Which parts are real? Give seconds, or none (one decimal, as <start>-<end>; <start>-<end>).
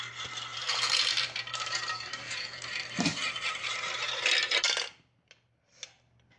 0.0-0.5; 4.3-6.4